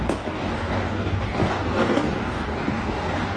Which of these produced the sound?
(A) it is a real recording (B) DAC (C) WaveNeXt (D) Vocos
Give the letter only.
B